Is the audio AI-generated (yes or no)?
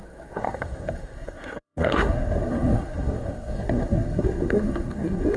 yes